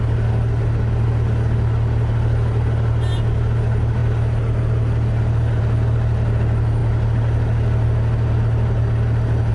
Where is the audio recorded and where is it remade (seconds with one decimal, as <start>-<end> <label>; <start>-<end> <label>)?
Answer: 0.0-9.5 recorded